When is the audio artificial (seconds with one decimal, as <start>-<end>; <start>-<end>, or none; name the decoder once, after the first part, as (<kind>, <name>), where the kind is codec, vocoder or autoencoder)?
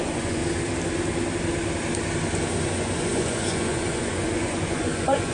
0.0-0.4 (vocoder, Vocos); 2.7-5.3